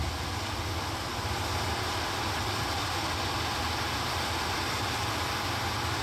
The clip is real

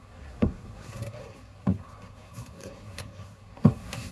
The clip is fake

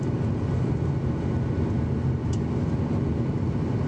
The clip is real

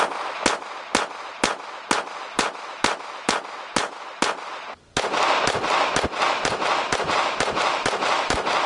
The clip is real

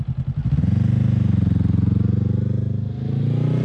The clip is real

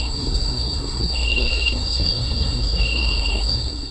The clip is fake